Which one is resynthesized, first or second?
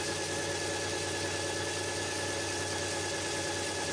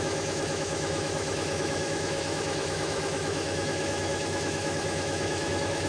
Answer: second